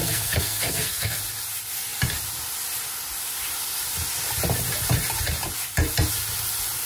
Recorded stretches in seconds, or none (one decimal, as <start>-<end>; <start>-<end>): 1.2-6.9